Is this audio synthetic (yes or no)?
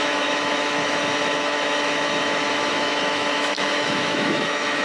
yes